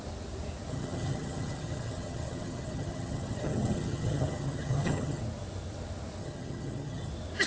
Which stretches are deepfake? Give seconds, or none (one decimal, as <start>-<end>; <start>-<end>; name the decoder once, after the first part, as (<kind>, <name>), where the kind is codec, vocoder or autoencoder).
0.7-5.2 (vocoder, HiFi-GAN); 6.2-7.1